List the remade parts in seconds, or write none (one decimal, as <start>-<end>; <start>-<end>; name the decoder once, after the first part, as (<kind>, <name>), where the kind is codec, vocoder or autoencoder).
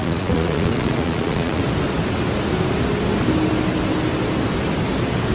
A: 0.0-1.6 (vocoder, Vocos)